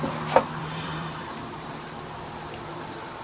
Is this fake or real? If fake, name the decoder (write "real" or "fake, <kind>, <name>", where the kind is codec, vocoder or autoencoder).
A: fake, vocoder, BigVGAN v2